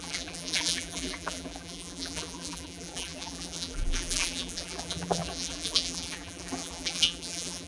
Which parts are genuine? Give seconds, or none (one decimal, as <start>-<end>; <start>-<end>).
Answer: none